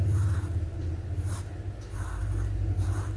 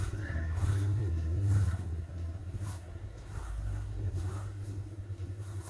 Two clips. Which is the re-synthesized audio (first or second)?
second